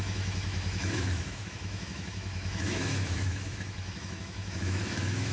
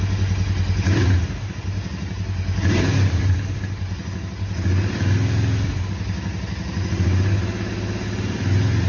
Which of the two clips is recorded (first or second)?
second